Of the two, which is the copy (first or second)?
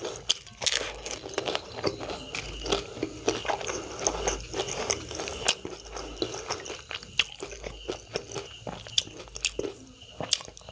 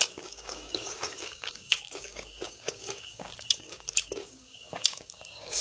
second